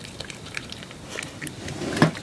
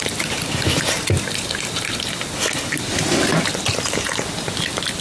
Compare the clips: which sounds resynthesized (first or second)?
first